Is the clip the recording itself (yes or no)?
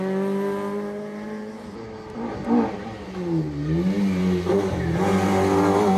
yes